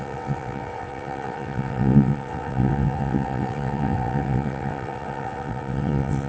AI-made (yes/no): yes